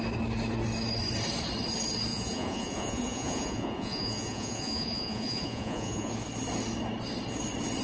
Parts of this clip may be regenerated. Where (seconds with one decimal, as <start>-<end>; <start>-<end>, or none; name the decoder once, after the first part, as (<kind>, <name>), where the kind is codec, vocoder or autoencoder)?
2.1-6.1 (vocoder, Vocos)